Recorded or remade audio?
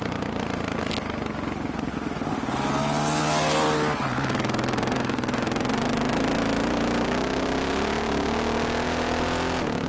recorded